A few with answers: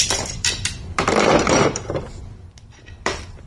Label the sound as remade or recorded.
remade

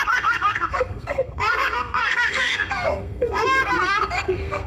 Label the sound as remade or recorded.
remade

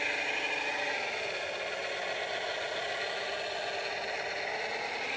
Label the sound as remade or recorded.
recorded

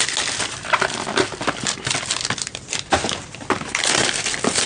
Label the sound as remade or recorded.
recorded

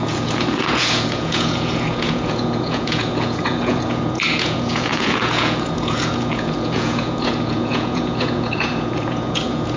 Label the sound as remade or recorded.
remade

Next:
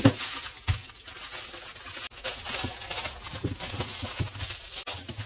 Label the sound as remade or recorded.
recorded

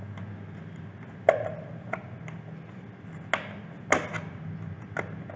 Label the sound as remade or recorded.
recorded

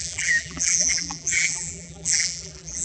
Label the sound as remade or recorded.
remade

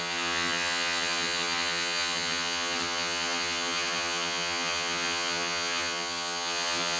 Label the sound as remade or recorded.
remade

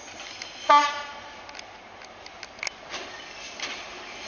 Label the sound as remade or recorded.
recorded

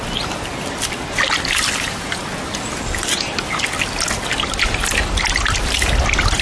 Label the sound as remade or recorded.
recorded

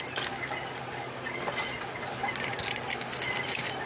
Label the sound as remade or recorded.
recorded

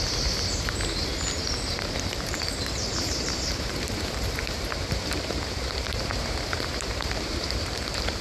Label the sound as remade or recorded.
remade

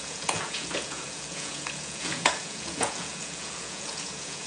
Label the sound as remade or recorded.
remade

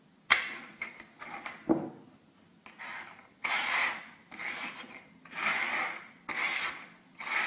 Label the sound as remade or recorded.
recorded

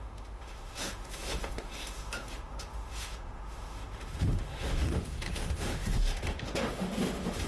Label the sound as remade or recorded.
remade